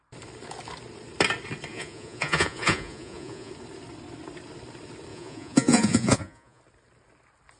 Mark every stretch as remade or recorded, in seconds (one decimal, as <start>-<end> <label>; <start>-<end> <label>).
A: 0.0-1.7 recorded; 1.7-3.5 remade; 3.5-5.1 recorded; 5.1-6.6 remade; 6.6-7.6 recorded